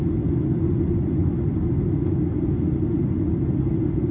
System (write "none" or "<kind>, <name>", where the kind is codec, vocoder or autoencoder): none